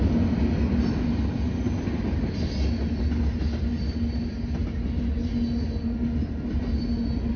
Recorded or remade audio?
recorded